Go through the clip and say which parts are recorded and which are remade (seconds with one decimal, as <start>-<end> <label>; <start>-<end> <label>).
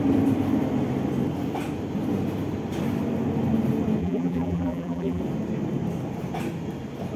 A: 0.0-4.0 recorded; 4.0-5.2 remade; 5.2-7.2 recorded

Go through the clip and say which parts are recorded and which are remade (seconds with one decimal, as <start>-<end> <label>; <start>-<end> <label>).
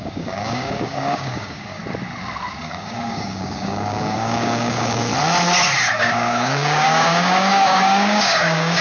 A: 0.0-1.8 remade; 1.8-2.6 recorded; 2.6-5.1 remade; 5.1-6.0 recorded; 6.0-8.8 remade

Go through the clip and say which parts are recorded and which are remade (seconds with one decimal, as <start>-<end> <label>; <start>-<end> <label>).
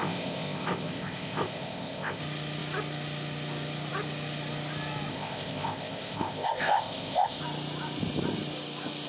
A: 0.0-2.2 remade; 2.2-5.1 recorded; 5.1-7.4 remade; 7.4-9.1 recorded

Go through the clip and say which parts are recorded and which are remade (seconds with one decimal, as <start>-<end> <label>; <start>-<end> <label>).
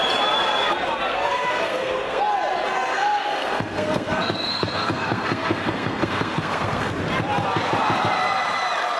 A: 0.0-1.1 recorded; 1.1-2.2 remade; 2.2-2.9 recorded; 2.9-6.9 remade; 6.9-9.0 recorded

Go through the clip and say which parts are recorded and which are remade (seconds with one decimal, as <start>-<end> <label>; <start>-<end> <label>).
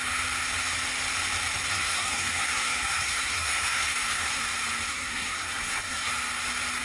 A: 0.0-1.7 recorded; 1.7-4.4 remade; 4.4-4.9 recorded; 4.9-6.1 remade; 6.1-6.8 recorded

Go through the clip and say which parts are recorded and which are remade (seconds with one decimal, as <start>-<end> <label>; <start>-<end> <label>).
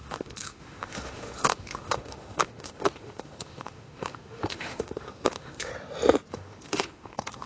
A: 0.0-5.7 remade; 5.7-6.3 recorded; 6.3-7.5 remade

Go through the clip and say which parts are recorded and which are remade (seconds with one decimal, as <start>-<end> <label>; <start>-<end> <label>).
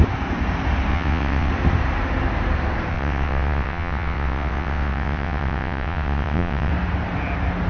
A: 0.0-0.9 recorded; 0.9-1.5 remade; 1.5-2.9 recorded; 2.9-6.7 remade; 6.7-7.7 recorded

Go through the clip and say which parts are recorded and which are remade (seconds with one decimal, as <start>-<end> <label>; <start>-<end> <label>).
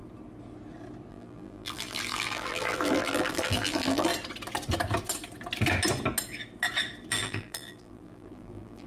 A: 0.0-1.1 recorded; 1.1-4.1 remade; 4.1-7.1 recorded; 7.1-8.9 remade